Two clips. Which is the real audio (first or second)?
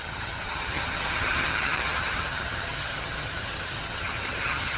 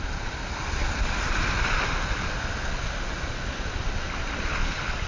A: second